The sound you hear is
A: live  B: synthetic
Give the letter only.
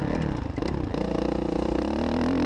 A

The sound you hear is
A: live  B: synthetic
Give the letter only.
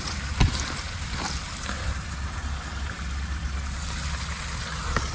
A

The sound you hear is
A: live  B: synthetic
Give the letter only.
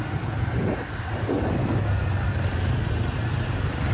A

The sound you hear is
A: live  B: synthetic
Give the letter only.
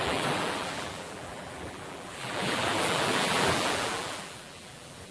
B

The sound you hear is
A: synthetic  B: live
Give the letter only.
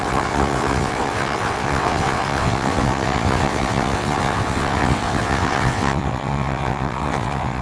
A